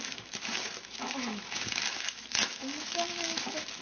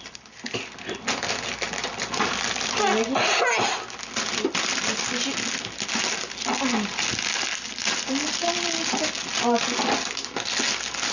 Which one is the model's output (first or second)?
first